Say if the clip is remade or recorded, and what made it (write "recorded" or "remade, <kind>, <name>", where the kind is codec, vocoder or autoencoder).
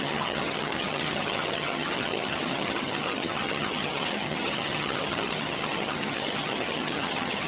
remade, vocoder, HiFi-GAN